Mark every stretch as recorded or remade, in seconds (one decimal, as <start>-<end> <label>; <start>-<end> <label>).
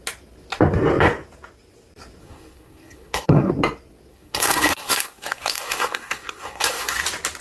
0.0-2.2 recorded; 2.2-3.5 remade; 3.5-4.1 recorded; 4.1-7.0 remade; 7.0-7.4 recorded